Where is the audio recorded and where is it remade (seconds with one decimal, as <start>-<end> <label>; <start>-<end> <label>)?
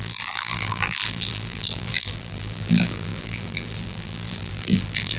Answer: 0.0-5.2 remade